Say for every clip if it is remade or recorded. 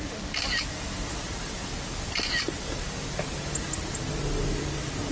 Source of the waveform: recorded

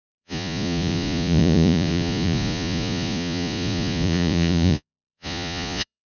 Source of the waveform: remade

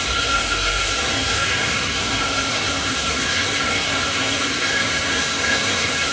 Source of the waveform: remade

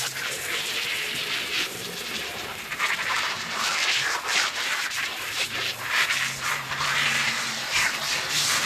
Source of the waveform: remade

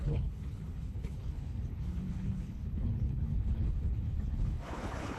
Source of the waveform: remade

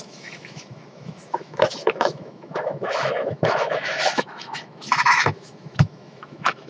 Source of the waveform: remade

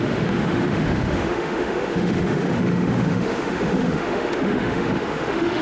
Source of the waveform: remade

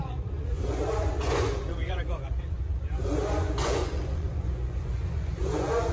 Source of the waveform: remade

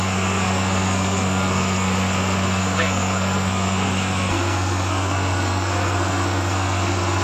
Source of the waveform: remade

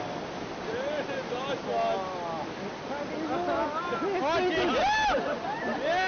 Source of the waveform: recorded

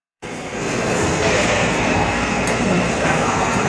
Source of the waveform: remade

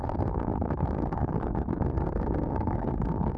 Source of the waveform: remade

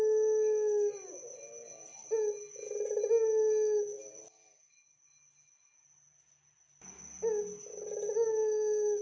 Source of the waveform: recorded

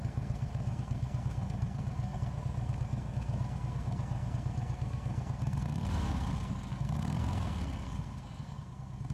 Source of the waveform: remade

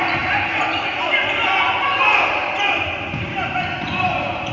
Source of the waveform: recorded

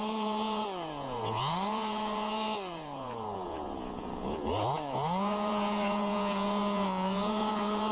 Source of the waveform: remade